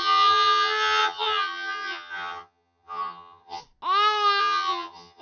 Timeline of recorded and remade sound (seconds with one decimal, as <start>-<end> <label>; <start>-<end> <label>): 0.0-3.6 remade; 3.6-4.4 recorded; 4.4-5.2 remade